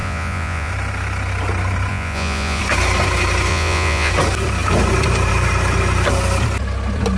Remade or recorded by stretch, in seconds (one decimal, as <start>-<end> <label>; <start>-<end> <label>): 0.0-0.7 remade; 0.7-1.9 recorded; 1.9-2.6 remade; 2.6-3.5 recorded; 3.5-4.1 remade; 4.1-7.2 recorded